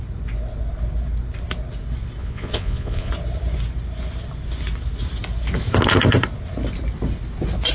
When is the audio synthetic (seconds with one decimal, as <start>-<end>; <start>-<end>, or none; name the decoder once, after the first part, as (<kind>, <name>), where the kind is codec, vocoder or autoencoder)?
2.2-3.1 (vocoder, Vocos)